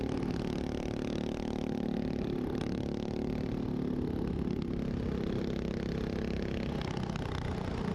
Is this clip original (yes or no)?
yes